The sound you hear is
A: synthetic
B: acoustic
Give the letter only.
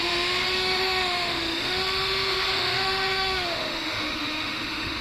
A